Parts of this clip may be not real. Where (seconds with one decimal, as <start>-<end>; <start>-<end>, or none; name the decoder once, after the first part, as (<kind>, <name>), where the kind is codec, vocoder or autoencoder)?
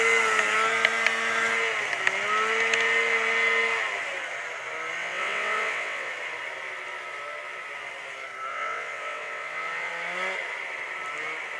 5.0-6.1 (vocoder, WaveNeXt); 8.5-9.9